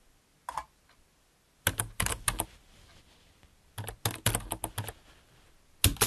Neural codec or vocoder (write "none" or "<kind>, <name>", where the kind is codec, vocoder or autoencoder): none